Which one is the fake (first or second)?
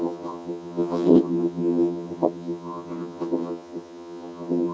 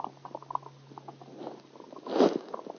first